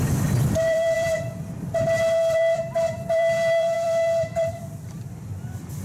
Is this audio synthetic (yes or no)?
yes